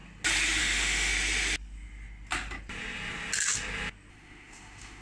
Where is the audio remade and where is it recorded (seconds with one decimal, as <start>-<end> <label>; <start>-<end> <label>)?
0.0-0.6 recorded; 0.6-1.1 remade; 1.1-4.1 recorded; 4.1-5.0 remade